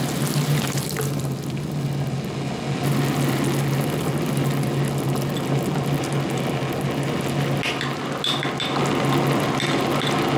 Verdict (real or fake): real